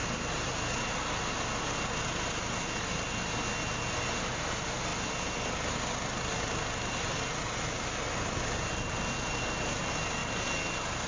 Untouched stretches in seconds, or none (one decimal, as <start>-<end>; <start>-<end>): 0.0-11.1